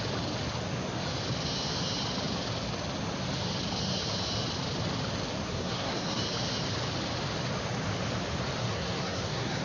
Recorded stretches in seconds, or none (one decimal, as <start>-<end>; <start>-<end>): 0.0-5.5; 6.2-8.6